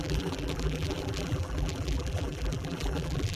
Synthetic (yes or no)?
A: yes